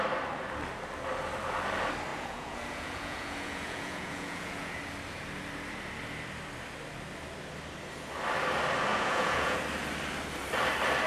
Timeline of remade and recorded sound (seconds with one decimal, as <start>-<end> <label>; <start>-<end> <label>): 0.0-2.1 recorded; 2.1-4.8 remade; 4.8-8.9 recorded; 8.9-9.6 remade; 9.6-11.1 recorded